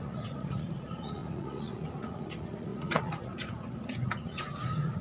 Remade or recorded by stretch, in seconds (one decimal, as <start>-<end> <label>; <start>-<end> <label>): 0.0-5.0 remade